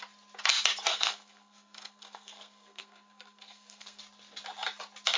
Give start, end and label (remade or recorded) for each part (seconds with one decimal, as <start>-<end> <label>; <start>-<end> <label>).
0.0-0.9 recorded; 0.9-4.0 remade; 4.0-5.2 recorded